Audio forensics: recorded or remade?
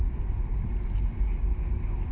recorded